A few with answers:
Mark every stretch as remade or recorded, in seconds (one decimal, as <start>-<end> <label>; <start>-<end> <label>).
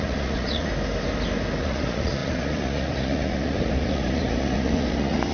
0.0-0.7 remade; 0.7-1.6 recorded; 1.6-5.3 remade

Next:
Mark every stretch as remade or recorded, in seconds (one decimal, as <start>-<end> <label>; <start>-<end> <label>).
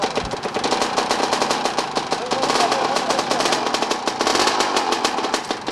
0.0-5.7 recorded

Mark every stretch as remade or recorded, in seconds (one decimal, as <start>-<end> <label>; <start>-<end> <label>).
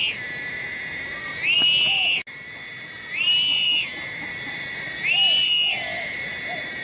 0.0-6.8 recorded